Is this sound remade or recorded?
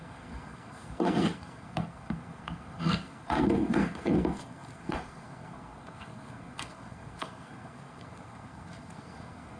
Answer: remade